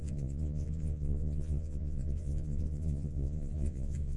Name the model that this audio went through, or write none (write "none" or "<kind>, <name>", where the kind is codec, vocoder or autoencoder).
vocoder, Vocos